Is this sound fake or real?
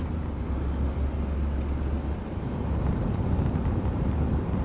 real